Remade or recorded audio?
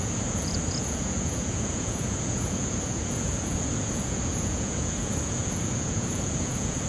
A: remade